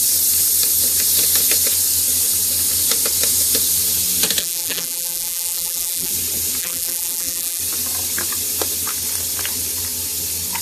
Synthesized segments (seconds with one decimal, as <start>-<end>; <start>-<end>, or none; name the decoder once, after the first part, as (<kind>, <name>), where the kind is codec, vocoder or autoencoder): 4.4-6.1 (vocoder, BigVGAN v2); 6.6-7.6